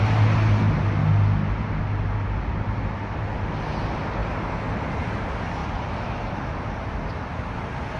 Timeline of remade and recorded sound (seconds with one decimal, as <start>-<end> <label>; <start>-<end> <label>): 0.0-8.0 recorded